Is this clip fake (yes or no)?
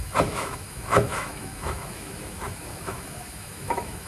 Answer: yes